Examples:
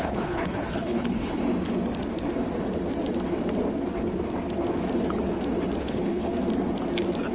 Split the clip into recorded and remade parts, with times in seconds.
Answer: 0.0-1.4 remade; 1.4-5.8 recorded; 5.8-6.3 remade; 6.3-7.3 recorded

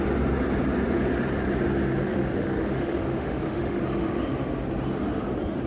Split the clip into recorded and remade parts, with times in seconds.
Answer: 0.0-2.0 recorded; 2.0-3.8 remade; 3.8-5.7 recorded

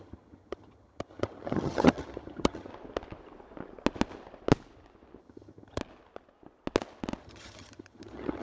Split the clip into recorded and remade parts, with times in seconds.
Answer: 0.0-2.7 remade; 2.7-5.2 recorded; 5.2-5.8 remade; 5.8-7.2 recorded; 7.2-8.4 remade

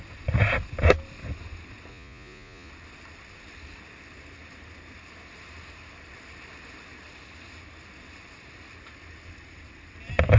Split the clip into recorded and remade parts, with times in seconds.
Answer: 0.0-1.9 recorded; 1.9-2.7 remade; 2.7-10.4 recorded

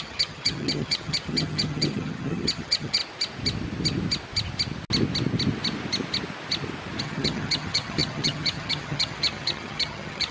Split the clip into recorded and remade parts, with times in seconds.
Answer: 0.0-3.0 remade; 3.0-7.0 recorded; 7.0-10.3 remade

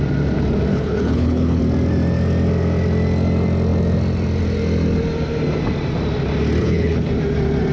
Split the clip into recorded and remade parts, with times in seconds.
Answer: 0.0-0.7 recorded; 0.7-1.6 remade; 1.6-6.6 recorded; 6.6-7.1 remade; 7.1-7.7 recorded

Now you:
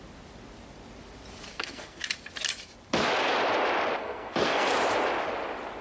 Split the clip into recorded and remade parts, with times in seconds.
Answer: 0.0-1.5 recorded; 1.5-2.1 remade; 2.1-4.0 recorded; 4.0-4.7 remade; 4.7-5.8 recorded